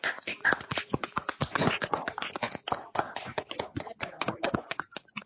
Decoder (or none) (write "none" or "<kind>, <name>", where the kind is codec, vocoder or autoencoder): vocoder, Vocos